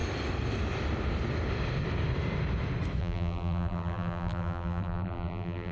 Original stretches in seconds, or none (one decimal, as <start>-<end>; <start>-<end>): 0.0-3.0